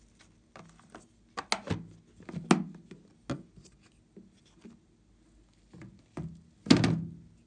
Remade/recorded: recorded